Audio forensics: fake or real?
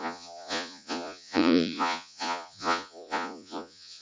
fake